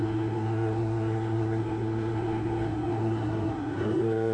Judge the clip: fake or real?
fake